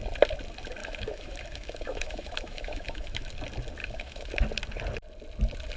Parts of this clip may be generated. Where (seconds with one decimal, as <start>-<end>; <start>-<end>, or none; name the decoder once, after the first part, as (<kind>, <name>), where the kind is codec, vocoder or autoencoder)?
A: 0.8-3.3 (autoencoder, DAC-VAE); 3.8-4.3